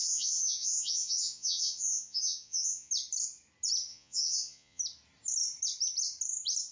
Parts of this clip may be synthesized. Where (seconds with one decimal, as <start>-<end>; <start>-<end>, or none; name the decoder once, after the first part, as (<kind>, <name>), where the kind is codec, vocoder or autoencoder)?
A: 0.0-2.9 (vocoder, Vocos); 3.9-4.8